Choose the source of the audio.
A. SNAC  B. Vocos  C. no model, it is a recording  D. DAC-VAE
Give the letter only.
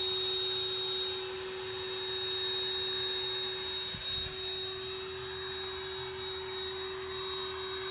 C